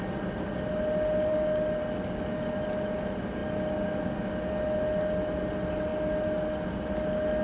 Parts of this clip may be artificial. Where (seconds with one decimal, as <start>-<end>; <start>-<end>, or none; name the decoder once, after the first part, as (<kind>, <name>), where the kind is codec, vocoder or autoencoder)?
1.3-1.8 (codec, DAC)